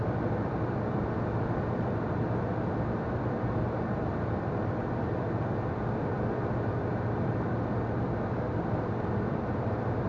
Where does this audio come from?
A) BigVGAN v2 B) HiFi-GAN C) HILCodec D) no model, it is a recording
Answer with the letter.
A